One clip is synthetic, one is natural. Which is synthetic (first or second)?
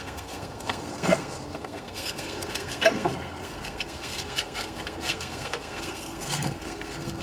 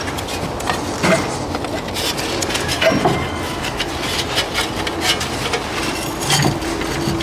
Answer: first